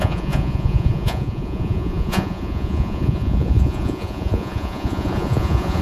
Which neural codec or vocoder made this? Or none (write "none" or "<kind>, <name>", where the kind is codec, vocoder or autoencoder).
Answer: vocoder, Vocos